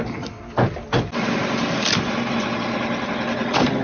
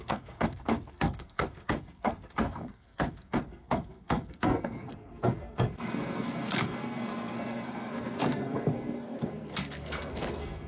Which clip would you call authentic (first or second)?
first